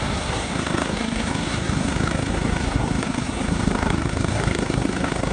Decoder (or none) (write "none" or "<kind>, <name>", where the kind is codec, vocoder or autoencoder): codec, SNAC